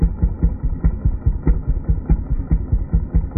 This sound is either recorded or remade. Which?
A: recorded